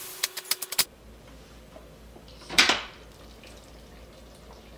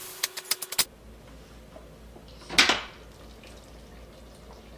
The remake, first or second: first